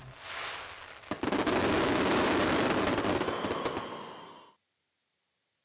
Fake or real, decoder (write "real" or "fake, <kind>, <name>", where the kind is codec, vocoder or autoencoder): real